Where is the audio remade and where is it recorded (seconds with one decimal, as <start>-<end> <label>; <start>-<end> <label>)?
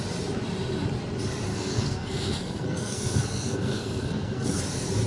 0.0-1.5 recorded; 1.5-4.6 remade; 4.6-5.1 recorded